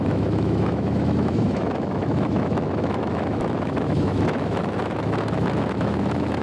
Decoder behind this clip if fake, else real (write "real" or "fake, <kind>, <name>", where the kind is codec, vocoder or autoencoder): fake, autoencoder, DAC-VAE